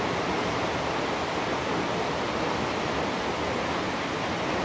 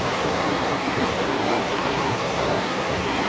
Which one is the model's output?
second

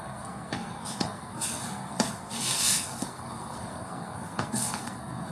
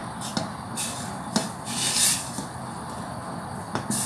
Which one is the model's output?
first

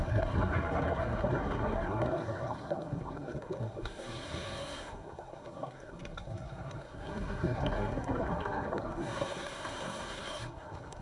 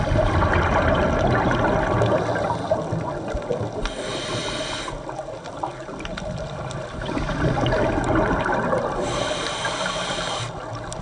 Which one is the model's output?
first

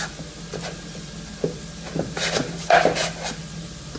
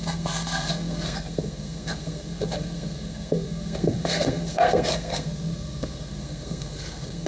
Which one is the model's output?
second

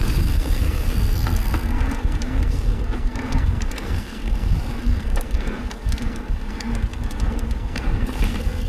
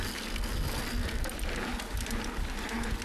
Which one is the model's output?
first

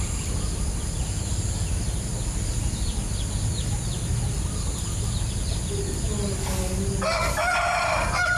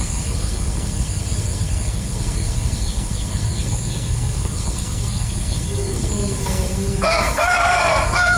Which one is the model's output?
second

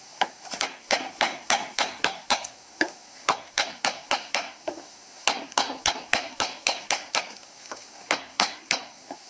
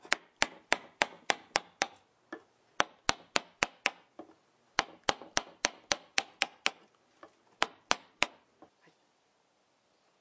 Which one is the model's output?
first